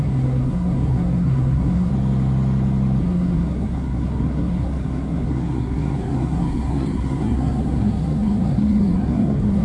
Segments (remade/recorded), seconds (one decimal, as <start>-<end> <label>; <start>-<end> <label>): 0.0-1.9 remade; 1.9-3.0 recorded; 3.0-9.6 remade